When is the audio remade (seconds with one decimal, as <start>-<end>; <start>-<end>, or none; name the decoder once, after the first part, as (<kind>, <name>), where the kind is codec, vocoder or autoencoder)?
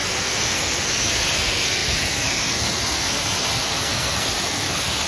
0.0-5.1 (codec, SNAC)